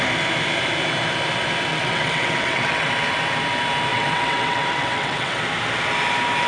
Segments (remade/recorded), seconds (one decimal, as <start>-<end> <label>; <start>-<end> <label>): 0.0-1.7 recorded; 1.7-2.9 remade; 2.9-3.9 recorded; 3.9-5.4 remade; 5.4-6.5 recorded

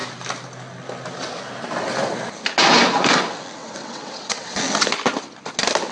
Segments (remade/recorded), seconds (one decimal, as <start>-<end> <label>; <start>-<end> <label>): 0.0-3.6 recorded; 3.6-4.6 remade; 4.6-5.9 recorded

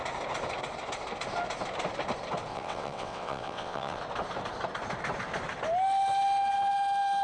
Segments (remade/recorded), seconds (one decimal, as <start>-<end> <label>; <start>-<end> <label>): 0.0-2.5 recorded; 2.5-4.0 remade; 4.0-7.2 recorded

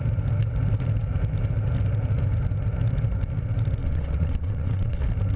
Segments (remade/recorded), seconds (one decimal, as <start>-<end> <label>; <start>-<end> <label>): 0.0-3.8 recorded; 3.8-5.0 remade; 5.0-5.4 recorded

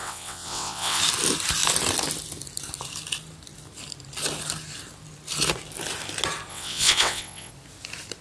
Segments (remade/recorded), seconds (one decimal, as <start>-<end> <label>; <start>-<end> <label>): 0.0-1.0 remade; 1.0-6.5 recorded; 6.5-7.5 remade; 7.5-8.2 recorded